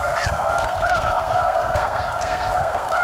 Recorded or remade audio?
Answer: remade